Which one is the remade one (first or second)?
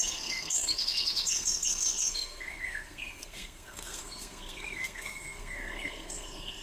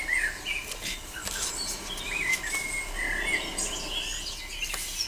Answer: first